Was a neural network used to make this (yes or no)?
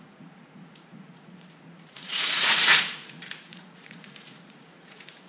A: yes